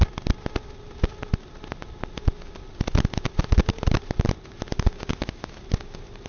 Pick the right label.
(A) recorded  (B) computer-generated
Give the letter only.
A